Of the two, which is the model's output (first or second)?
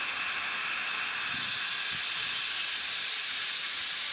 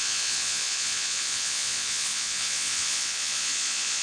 second